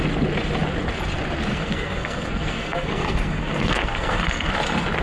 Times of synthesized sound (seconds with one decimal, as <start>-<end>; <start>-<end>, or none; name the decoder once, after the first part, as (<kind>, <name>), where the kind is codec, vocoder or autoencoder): 1.5-4.5 (codec, SNAC)